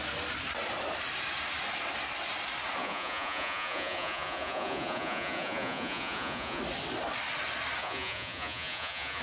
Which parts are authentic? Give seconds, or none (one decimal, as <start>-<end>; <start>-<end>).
0.0-2.8; 6.6-7.8